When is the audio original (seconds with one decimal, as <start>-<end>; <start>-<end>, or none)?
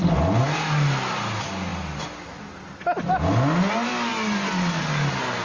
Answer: 0.0-5.4